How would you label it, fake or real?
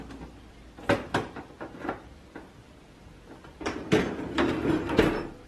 real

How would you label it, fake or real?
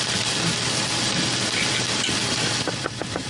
real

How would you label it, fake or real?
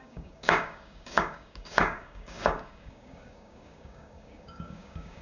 fake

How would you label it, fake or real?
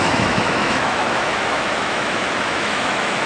fake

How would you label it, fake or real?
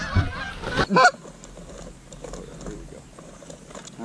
real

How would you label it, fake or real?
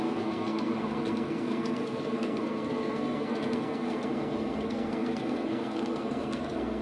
fake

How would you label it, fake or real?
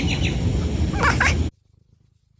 real